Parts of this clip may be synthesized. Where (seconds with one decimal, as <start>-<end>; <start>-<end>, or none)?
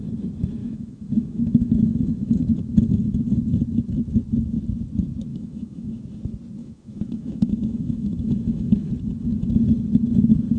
0.6-2.4; 5.3-6.0; 6.6-8.9